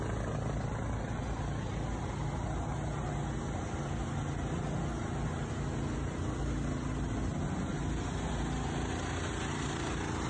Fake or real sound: real